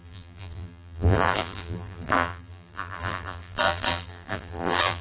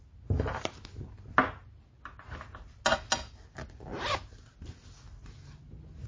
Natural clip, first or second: second